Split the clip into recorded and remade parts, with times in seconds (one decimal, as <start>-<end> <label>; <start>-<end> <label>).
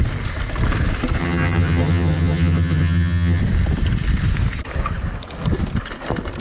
0.0-1.2 recorded; 1.2-3.4 remade; 3.4-6.4 recorded